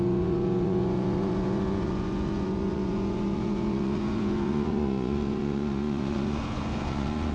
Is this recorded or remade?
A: remade